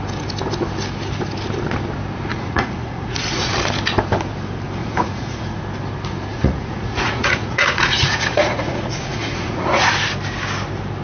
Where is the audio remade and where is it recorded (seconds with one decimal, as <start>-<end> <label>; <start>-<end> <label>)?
0.0-2.3 recorded; 2.3-3.5 remade; 3.5-4.8 recorded; 4.8-5.6 remade; 5.6-6.3 recorded; 6.3-9.9 remade; 9.9-11.0 recorded